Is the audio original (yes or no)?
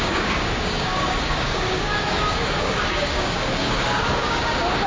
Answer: no